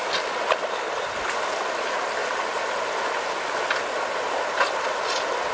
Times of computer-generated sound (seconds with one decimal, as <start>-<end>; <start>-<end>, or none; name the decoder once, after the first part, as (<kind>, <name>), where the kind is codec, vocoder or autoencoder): none